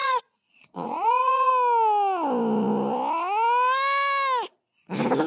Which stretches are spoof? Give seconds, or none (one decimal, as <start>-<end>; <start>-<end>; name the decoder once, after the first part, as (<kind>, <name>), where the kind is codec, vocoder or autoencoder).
0.0-1.5 (vocoder, Vocos)